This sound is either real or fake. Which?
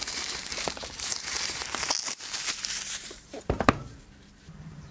fake